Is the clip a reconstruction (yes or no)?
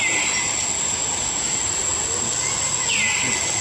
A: no